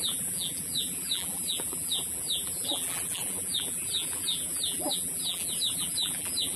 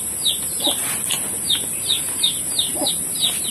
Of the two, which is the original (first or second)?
second